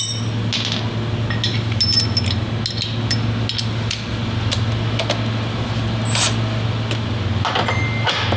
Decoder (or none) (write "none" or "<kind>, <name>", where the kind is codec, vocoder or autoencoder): none